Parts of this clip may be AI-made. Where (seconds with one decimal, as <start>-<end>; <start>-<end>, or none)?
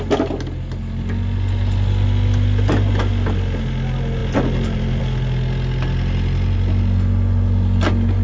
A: 4.2-5.0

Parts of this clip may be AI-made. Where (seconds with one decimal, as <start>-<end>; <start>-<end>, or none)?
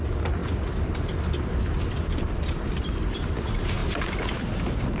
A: none